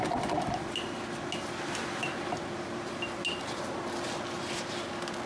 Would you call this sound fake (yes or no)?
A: no